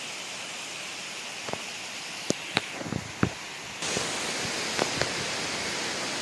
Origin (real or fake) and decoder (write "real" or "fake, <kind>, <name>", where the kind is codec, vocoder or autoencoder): real